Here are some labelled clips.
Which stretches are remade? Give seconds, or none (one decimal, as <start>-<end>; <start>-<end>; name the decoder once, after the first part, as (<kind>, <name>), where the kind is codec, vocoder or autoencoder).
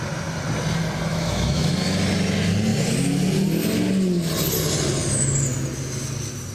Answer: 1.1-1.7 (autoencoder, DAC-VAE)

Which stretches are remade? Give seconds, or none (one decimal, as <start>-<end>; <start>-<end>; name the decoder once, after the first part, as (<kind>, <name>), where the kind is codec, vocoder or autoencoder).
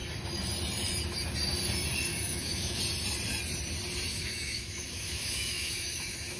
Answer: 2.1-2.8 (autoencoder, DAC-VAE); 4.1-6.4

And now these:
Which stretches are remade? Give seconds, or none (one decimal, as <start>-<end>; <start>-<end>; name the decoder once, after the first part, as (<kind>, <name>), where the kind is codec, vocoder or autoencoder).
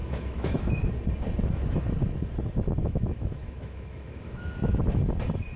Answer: 0.0-0.7 (autoencoder, DAC-VAE); 2.8-4.8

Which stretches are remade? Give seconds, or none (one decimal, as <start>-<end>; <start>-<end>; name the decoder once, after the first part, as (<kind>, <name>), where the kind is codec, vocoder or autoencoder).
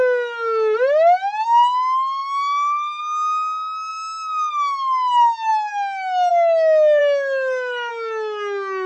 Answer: 2.2-3.0 (autoencoder, DAC-VAE); 3.9-4.5; 5.5-6.3; 7.0-7.9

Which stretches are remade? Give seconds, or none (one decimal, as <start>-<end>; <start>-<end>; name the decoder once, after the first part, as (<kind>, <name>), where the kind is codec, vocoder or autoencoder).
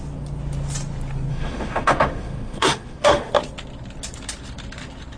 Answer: 1.3-3.3 (autoencoder, DAC-VAE)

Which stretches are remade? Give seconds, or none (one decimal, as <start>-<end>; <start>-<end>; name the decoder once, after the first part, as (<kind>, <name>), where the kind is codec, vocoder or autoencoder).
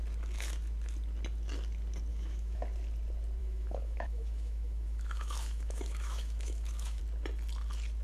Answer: 2.1-2.6 (autoencoder, DAC-VAE); 3.4-7.0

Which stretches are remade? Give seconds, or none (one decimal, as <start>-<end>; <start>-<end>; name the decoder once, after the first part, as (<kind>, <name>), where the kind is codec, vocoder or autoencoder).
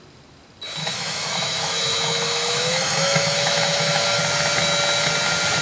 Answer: 0.8-4.2 (autoencoder, DAC-VAE)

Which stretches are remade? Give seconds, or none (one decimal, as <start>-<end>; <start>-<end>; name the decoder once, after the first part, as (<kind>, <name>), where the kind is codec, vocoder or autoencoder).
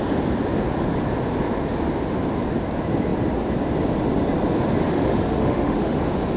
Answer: 4.9-6.0 (autoencoder, DAC-VAE)